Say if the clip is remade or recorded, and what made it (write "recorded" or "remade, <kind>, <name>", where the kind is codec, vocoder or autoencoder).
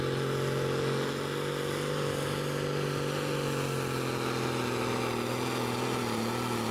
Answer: recorded